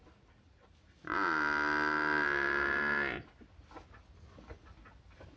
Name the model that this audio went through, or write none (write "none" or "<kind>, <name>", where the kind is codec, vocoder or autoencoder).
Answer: none